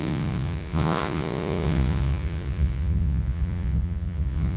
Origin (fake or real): fake